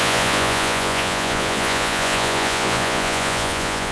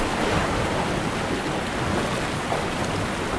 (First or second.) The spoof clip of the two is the first